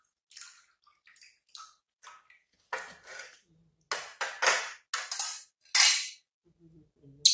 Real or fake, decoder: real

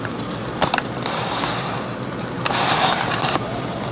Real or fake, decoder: fake, vocoder, BigVGAN v2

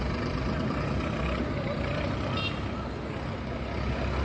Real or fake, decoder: real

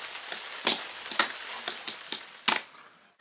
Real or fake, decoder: real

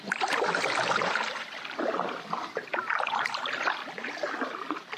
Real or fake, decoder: fake, vocoder, BigVGAN v2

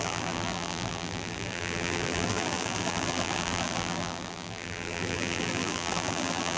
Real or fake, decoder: fake, vocoder, BigVGAN v2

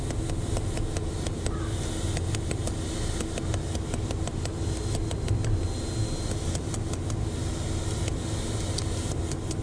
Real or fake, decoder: real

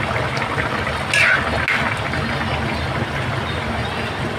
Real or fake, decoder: real